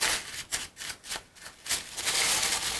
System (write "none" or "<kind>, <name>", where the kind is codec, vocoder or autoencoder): none